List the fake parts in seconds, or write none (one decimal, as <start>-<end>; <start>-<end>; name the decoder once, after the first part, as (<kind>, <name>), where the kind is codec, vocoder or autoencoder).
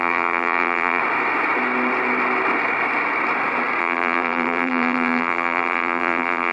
0.0-1.0 (vocoder, BigVGAN v2); 3.8-6.5